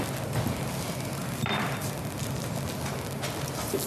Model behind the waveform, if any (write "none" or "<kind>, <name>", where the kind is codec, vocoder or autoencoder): none